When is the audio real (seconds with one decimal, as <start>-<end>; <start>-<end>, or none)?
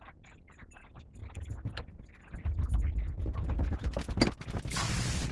0.0-5.3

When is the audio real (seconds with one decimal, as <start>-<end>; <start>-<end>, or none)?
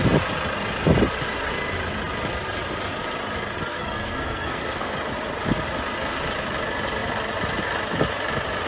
0.0-3.7; 4.9-8.7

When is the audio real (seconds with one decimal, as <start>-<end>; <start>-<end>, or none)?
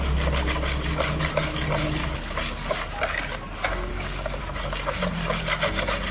0.0-2.0; 3.0-3.9; 4.4-6.1